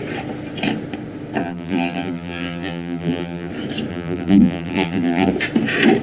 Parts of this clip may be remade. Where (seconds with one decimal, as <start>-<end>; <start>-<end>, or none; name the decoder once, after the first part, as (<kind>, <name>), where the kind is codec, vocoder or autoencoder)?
1.4-3.5 (vocoder, BigVGAN v2); 3.9-5.3